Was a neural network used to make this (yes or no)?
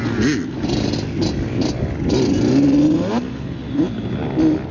no